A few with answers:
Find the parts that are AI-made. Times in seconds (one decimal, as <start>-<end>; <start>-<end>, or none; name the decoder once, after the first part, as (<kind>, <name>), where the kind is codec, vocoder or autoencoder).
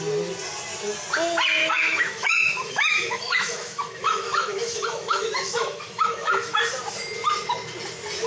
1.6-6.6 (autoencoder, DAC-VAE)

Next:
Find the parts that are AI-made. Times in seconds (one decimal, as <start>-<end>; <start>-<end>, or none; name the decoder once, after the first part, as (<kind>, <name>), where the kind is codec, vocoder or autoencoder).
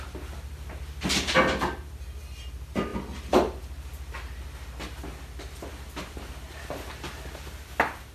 none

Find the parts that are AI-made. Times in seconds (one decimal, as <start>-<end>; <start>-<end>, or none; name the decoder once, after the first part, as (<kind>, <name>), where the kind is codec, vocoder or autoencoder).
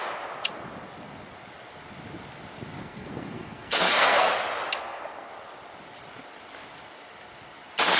2.8-4.3 (codec, SNAC); 4.8-5.3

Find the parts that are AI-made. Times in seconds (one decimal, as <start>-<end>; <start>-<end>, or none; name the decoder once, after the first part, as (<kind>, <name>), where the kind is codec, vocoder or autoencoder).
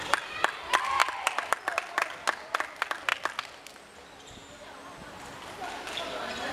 1.0-1.9 (vocoder, BigVGAN v2)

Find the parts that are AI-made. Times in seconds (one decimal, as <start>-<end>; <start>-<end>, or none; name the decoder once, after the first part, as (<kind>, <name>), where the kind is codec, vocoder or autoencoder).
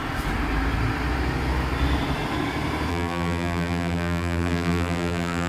2.9-5.5 (vocoder, BigVGAN v2)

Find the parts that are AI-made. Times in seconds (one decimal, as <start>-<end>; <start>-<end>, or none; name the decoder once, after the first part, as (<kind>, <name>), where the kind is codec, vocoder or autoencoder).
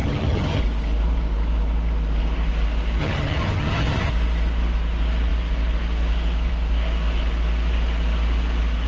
0.0-0.6 (vocoder, HiFi-GAN); 3.0-4.1